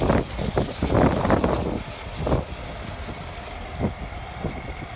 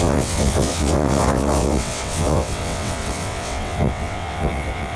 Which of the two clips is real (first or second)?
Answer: first